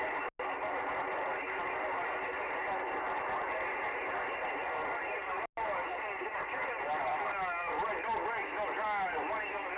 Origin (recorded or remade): recorded